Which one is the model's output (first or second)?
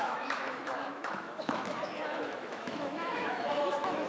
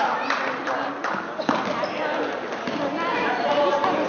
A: first